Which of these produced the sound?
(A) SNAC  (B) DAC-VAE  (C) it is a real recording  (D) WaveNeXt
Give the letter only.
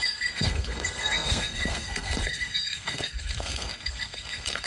A